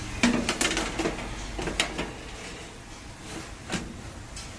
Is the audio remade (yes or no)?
no